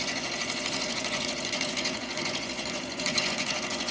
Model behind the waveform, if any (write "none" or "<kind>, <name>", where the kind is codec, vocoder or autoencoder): vocoder, Vocos